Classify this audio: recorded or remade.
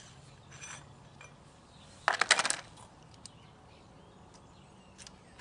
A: recorded